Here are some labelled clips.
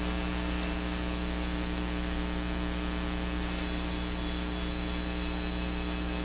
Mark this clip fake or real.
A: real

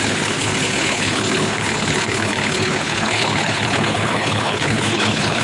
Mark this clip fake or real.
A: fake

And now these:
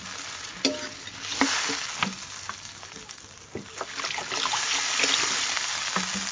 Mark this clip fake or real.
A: real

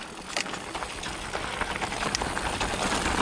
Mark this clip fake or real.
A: real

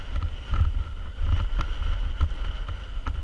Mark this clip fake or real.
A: real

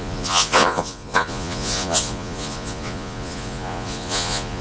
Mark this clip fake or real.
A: fake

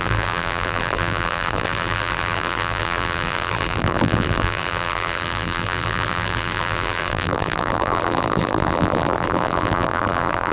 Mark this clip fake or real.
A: fake